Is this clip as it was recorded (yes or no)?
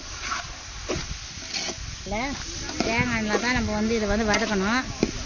yes